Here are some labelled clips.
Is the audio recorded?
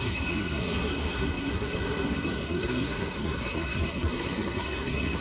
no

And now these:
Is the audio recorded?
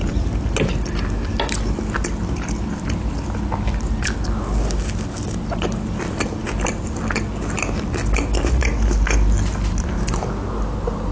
yes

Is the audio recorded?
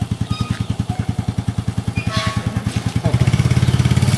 yes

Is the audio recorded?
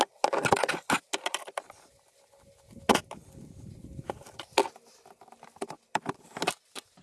yes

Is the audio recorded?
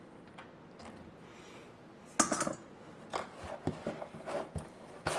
yes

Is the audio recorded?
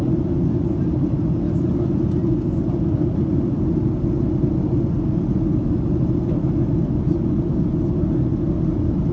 yes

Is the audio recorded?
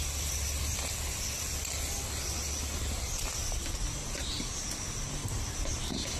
yes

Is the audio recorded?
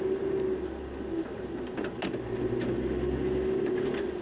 yes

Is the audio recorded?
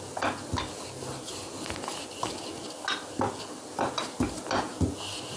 yes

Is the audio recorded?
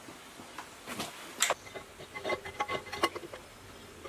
yes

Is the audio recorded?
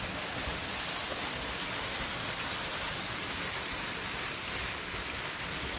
yes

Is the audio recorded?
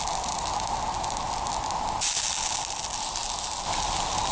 yes